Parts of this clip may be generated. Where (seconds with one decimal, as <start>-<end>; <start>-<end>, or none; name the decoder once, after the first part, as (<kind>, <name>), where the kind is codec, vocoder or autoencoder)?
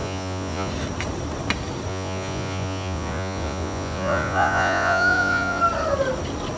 0.0-0.7 (vocoder, Vocos); 1.9-5.6